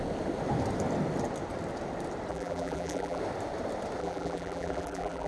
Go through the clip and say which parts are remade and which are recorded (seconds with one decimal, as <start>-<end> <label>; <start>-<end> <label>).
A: 0.0-2.3 recorded; 2.3-3.2 remade; 3.2-4.0 recorded; 4.0-5.3 remade